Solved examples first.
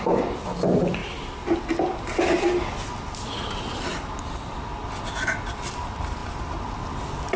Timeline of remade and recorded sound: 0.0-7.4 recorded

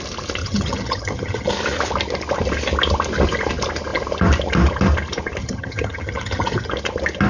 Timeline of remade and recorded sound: 0.0-0.4 recorded; 0.4-1.5 remade; 1.5-5.4 recorded; 5.4-6.7 remade; 6.7-7.3 recorded

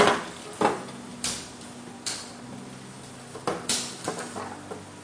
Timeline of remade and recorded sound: 0.0-5.0 recorded

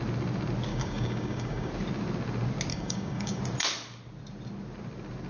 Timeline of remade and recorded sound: 0.0-0.7 recorded; 0.7-1.7 remade; 1.7-2.7 recorded; 2.7-3.4 remade; 3.4-5.3 recorded

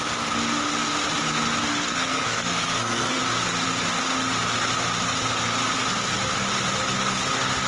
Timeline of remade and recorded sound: 0.0-1.7 recorded; 1.7-3.2 remade; 3.2-7.7 recorded